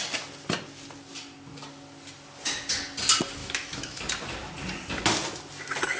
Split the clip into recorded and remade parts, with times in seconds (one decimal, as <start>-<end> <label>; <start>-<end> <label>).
0.0-3.4 recorded; 3.4-4.0 remade; 4.0-6.0 recorded